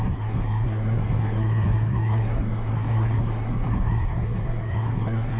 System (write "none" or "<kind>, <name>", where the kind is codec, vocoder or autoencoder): codec, SNAC